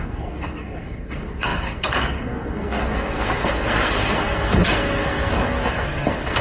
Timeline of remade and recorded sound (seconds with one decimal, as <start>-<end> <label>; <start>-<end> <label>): 0.0-6.4 remade